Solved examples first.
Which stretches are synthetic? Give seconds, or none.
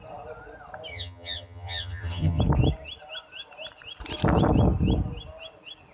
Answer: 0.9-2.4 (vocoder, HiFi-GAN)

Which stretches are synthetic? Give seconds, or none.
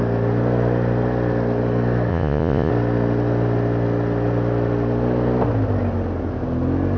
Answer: 2.1-2.7 (vocoder, Vocos)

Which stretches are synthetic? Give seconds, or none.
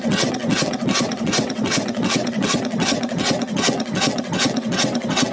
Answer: 0.0-5.3 (vocoder, WaveNeXt)